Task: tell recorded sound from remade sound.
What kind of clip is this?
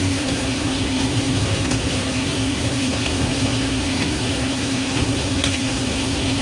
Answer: remade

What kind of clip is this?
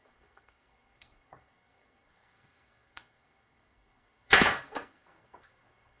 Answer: remade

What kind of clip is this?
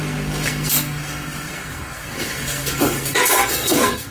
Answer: remade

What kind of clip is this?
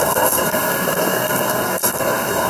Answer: remade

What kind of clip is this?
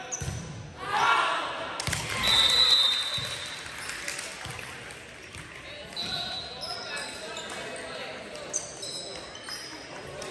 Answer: recorded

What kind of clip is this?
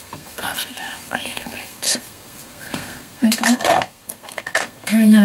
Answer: remade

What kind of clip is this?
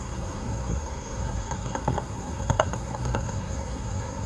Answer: remade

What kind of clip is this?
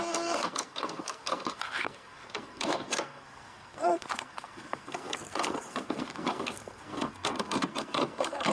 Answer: remade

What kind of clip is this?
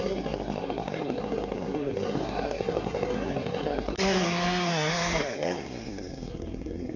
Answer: remade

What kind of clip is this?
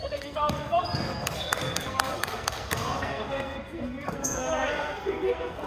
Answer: remade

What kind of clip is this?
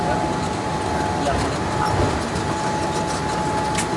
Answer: recorded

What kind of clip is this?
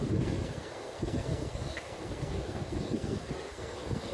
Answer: remade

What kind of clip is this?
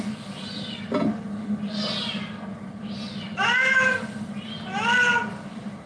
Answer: recorded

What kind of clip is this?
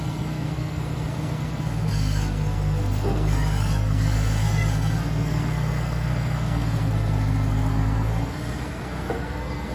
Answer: remade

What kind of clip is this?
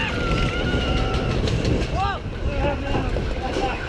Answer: recorded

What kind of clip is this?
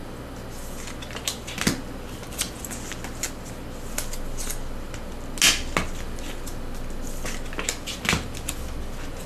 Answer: recorded